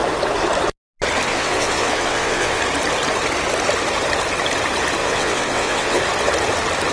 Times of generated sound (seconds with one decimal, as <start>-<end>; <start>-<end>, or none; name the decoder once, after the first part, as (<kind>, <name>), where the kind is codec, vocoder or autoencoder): 1.3-2.6 (vocoder, WaveNeXt); 5.0-6.0